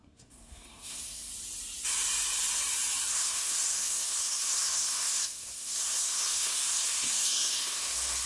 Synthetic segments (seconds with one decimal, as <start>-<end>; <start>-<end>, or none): 0.0-1.3; 3.1-8.3